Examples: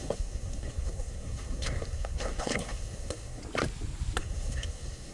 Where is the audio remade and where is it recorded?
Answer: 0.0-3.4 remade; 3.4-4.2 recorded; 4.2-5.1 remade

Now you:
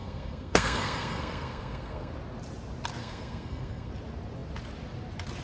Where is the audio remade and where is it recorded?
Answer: 0.0-2.1 remade; 2.1-3.0 recorded; 3.0-3.9 remade; 3.9-5.4 recorded

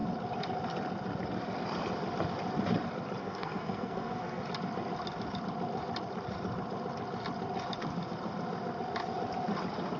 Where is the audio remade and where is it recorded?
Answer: 0.0-3.2 recorded; 3.2-4.4 remade; 4.4-10.0 recorded

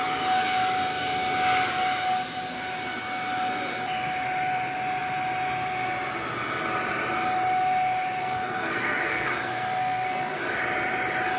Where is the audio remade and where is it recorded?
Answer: 0.0-8.2 recorded; 8.2-10.4 remade; 10.4-11.4 recorded